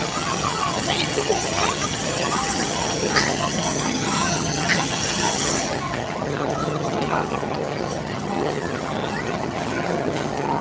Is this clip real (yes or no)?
no